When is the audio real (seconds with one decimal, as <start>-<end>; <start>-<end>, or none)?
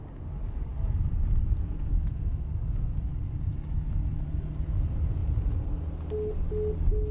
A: 0.0-7.1